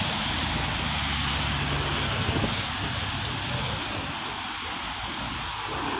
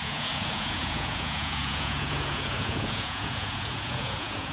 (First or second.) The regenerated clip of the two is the second